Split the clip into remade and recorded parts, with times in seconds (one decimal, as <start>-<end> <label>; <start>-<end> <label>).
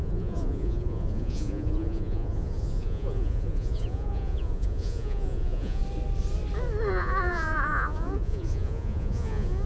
0.0-5.8 remade; 5.8-6.9 recorded; 6.9-9.7 remade